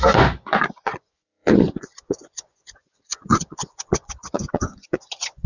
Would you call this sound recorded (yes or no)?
no